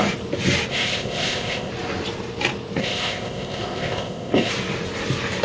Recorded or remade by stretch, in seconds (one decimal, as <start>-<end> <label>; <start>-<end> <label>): 0.0-0.7 recorded; 0.7-1.7 remade; 1.7-2.8 recorded; 2.8-4.5 remade; 4.5-5.4 recorded